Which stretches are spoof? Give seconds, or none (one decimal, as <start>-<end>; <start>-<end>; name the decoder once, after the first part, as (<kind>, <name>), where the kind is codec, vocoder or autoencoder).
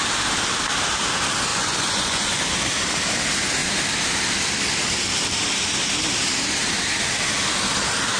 1.5-2.4 (vocoder, Vocos)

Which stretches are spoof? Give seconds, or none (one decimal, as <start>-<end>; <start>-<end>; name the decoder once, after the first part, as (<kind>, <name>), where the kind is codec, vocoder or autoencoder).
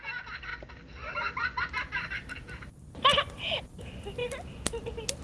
none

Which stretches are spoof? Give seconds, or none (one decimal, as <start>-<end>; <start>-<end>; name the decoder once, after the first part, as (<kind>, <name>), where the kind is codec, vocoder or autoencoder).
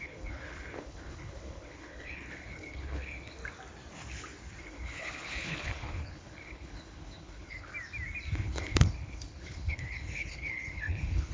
0.0-3.4 (codec, HILCodec); 4.6-7.7; 8.3-11.3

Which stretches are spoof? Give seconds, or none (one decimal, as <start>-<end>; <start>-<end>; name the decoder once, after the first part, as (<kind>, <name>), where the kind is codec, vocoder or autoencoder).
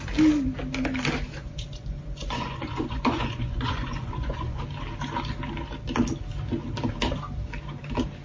1.3-4.6 (vocoder, Vocos)